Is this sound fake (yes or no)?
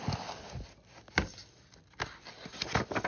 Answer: no